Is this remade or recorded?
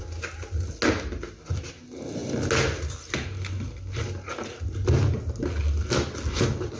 recorded